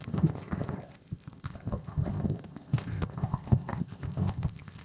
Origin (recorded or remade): remade